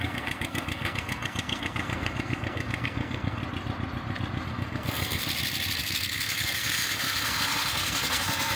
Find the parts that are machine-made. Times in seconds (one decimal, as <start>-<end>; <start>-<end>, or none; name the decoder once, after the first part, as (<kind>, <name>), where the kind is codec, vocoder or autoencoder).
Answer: 0.0-3.4 (codec, SNAC); 4.5-5.2; 5.8-8.6